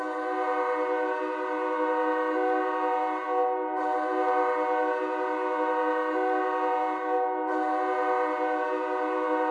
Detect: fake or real real